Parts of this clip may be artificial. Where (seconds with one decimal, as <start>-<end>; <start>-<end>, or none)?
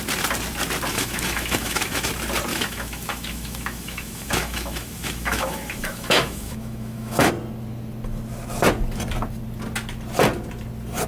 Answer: 0.9-2.1; 2.5-7.3